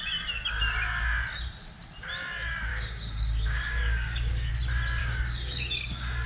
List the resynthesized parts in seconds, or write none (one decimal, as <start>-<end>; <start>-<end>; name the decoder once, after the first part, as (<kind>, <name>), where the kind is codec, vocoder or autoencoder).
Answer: 2.7-4.5 (codec, DAC); 5.0-6.3